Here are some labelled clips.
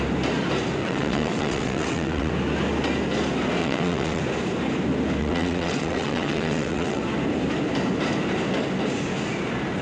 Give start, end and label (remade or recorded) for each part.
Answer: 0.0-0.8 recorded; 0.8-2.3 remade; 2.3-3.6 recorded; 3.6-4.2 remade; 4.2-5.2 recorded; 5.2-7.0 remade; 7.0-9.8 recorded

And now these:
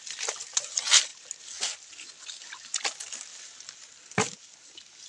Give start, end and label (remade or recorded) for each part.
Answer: 0.0-5.1 recorded

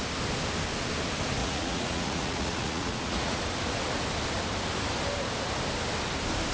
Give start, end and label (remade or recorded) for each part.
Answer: 0.0-1.4 recorded; 1.4-3.4 remade; 3.4-6.5 recorded

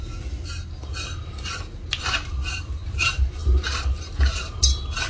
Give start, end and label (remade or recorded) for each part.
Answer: 0.0-5.1 recorded